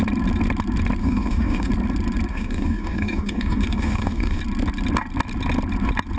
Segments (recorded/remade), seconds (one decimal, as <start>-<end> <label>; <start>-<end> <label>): 0.0-1.0 recorded; 1.0-1.7 remade; 1.7-2.3 recorded; 2.3-4.4 remade; 4.4-6.2 recorded